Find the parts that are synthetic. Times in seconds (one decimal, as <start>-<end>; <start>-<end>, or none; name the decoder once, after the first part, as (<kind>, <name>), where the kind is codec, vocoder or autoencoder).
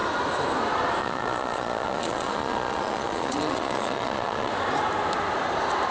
1.0-4.5 (vocoder, Vocos)